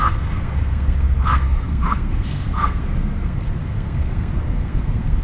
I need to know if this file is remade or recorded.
remade